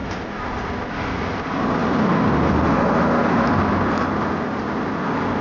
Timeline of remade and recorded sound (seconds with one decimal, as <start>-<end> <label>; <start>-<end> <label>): 0.0-5.4 recorded